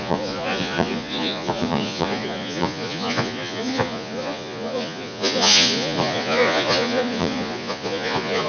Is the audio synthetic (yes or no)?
yes